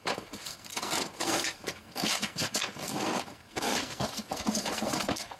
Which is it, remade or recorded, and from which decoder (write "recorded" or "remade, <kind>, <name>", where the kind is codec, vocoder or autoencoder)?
remade, codec, SNAC